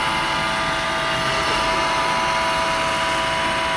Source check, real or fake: real